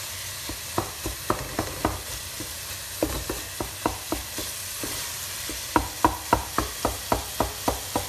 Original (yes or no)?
yes